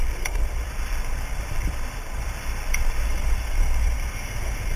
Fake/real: fake